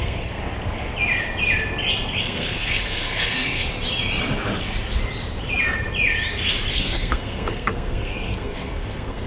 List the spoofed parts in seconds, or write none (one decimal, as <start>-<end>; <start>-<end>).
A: 0.0-0.4; 2.2-3.7; 6.7-9.3